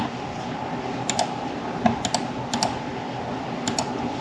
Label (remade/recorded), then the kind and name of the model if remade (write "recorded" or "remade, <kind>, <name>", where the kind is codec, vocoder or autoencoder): recorded